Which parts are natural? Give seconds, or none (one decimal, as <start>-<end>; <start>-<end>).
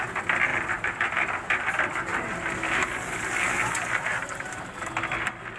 0.0-0.5; 1.7-2.1; 4.9-5.6